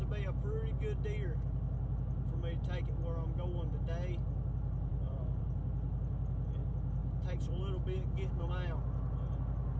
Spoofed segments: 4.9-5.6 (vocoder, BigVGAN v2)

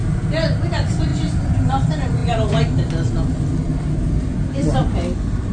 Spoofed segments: none

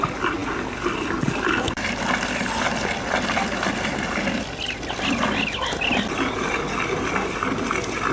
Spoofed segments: none

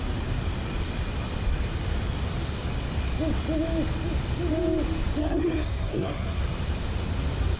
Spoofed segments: 5.2-6.4 (codec, SNAC)

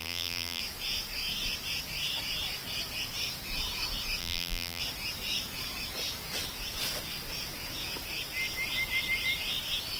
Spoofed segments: 0.0-0.6 (vocoder, BigVGAN v2); 4.2-4.8

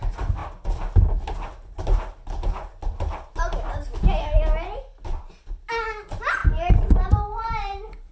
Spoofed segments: 6.4-8.1 (vocoder, BigVGAN v2)

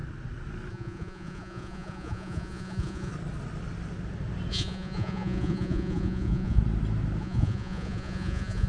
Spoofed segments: 0.7-3.1 (vocoder, Vocos); 4.5-6.6; 7.2-8.7